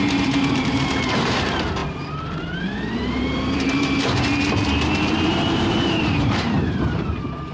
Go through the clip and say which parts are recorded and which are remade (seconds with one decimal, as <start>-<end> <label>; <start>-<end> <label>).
0.0-7.5 remade